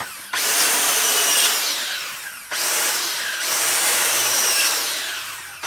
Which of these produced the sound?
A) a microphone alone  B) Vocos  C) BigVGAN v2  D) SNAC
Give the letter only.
C